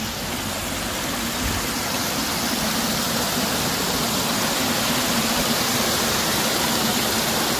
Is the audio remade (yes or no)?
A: yes